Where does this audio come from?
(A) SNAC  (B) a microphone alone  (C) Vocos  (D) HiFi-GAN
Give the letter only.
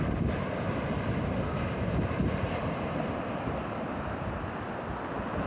B